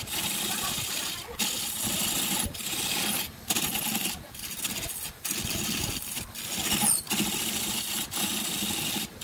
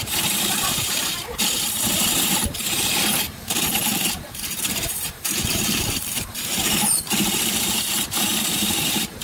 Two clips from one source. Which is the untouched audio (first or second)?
first